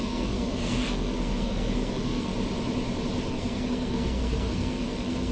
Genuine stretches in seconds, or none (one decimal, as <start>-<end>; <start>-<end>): 2.3-3.3